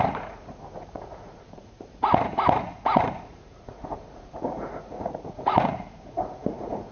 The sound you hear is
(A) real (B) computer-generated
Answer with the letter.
B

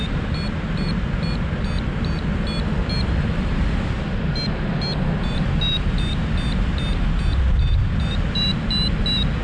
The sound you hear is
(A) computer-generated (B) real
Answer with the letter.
B